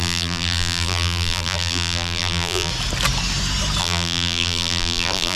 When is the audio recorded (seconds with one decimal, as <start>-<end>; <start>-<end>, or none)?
2.7-3.8